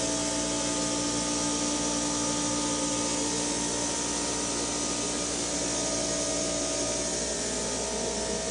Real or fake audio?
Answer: real